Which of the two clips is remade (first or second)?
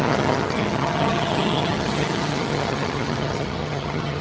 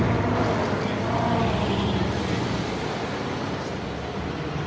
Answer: first